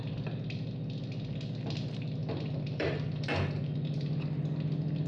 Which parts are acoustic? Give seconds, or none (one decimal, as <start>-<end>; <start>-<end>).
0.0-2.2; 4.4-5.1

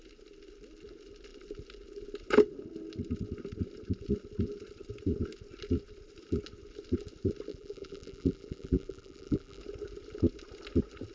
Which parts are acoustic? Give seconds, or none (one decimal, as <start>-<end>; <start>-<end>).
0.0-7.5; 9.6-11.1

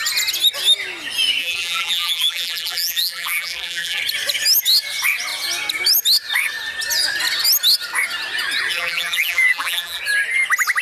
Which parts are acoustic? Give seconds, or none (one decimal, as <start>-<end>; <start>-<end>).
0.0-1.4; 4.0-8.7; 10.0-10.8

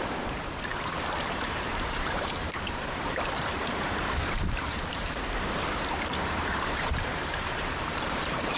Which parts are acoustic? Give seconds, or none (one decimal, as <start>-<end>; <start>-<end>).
none

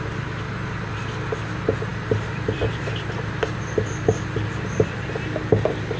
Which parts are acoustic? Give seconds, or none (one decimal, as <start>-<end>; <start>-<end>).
0.0-1.9; 5.5-6.0